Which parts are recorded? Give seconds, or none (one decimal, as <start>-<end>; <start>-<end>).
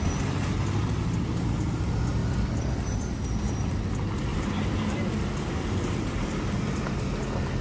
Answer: 0.0-4.3; 6.5-7.6